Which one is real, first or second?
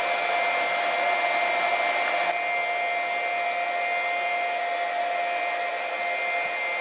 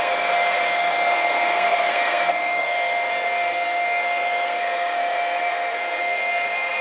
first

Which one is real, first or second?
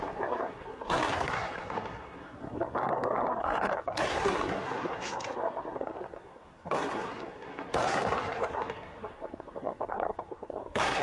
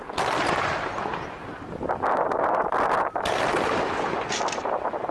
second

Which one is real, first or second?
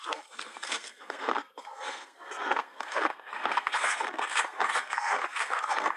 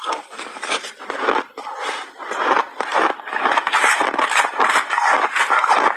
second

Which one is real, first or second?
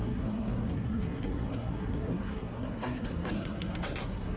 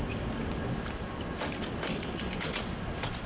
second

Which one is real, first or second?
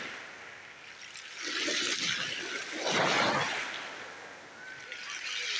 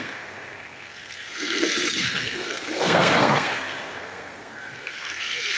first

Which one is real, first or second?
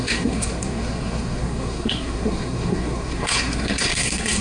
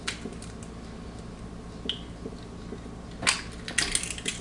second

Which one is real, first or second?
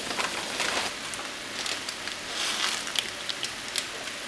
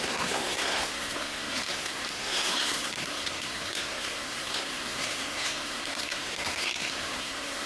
first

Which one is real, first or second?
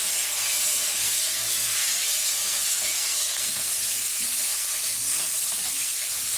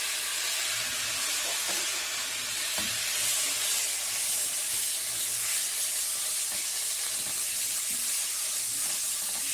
second